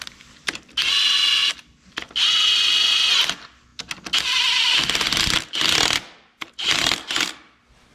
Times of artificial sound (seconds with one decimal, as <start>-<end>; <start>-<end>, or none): none